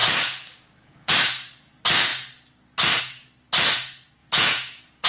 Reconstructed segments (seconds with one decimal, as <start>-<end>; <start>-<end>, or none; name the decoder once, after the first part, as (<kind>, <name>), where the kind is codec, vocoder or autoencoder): 0.0-1.1 (vocoder, Vocos); 4.2-5.1